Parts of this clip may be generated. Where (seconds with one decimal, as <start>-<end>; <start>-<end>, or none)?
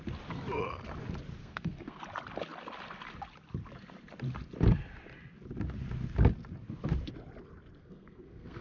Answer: 1.4-2.0; 7.8-8.6